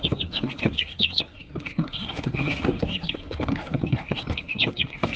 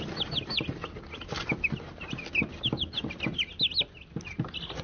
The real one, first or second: second